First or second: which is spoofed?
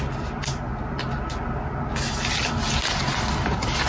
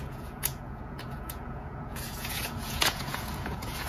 second